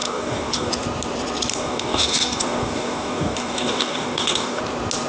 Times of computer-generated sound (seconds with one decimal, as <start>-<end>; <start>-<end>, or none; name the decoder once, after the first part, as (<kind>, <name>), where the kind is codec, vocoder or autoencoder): 0.0-0.7 (codec, DAC); 1.5-4.6